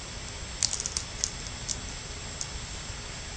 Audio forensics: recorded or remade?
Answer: recorded